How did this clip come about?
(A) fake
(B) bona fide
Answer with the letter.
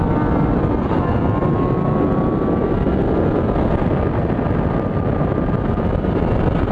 B